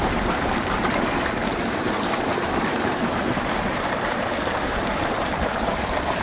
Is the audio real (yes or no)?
no